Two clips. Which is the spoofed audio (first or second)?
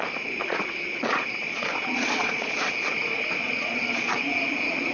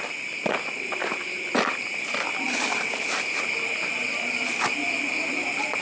first